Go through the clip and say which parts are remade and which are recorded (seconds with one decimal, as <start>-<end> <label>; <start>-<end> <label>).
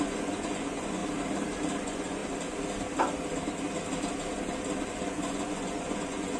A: 0.0-1.0 remade; 1.0-1.8 recorded; 1.8-2.2 remade; 2.2-4.9 recorded; 4.9-6.4 remade